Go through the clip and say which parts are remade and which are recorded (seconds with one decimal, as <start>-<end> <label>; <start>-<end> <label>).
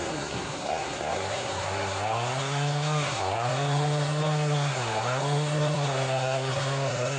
0.0-7.2 remade